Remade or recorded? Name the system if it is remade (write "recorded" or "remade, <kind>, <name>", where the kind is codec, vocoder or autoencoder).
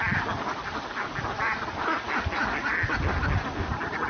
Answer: recorded